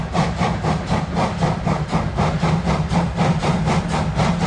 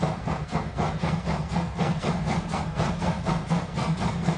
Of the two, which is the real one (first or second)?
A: first